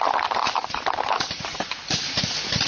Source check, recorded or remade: recorded